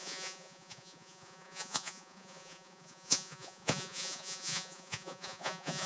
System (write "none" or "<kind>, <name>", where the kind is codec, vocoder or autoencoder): vocoder, Vocos